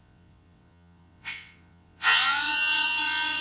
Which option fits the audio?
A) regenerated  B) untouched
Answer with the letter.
A